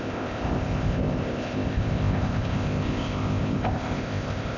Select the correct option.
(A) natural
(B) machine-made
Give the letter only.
B